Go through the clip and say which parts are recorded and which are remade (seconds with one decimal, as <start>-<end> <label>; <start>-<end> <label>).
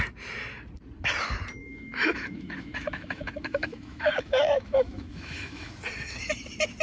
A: 0.0-1.6 recorded; 1.6-5.7 remade; 5.7-6.8 recorded